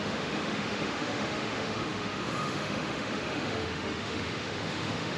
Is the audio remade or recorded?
remade